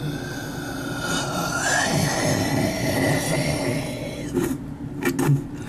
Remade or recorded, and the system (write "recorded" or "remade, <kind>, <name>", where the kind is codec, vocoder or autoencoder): recorded